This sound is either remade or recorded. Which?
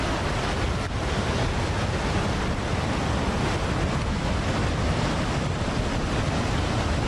recorded